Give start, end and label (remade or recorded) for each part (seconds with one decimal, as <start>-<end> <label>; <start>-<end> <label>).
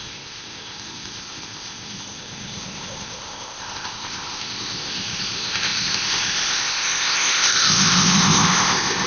0.0-9.1 remade